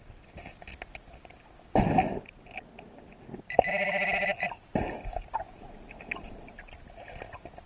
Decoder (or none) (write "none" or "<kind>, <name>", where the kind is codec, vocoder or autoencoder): none